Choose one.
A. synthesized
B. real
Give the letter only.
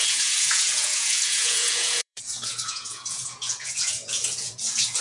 A